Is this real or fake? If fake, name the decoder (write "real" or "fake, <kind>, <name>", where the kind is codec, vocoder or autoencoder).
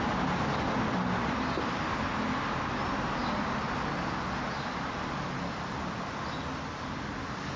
real